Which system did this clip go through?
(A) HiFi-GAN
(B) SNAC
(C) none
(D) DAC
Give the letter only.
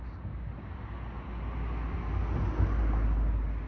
C